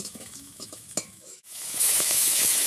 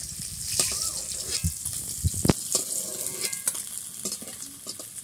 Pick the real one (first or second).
second